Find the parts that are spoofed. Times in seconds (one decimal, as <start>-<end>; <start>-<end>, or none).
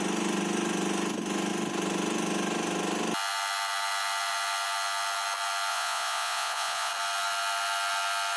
5.7-6.9